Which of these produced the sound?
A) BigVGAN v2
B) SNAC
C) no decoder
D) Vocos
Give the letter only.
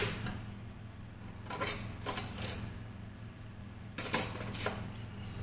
C